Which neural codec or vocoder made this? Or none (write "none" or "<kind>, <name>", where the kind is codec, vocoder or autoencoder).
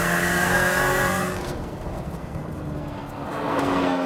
codec, SNAC